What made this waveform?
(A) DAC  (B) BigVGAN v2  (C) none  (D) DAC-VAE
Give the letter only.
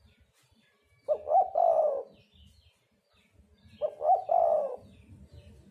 C